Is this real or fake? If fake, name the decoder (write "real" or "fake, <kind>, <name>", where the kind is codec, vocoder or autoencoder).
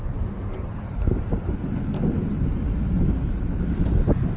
real